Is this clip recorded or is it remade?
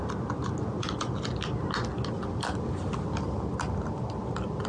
recorded